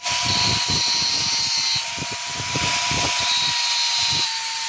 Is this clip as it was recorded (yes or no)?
yes